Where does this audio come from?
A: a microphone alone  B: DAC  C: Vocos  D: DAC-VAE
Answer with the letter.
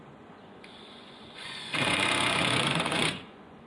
C